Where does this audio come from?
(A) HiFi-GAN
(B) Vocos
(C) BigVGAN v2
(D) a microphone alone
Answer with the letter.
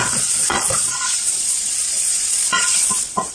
B